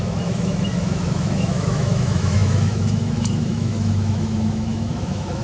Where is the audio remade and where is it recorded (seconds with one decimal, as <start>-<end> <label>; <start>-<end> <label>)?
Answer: 0.0-5.4 remade